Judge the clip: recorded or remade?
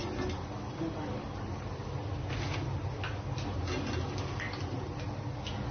recorded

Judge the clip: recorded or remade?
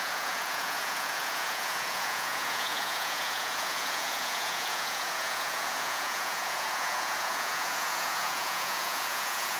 remade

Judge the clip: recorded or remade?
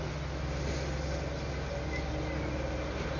recorded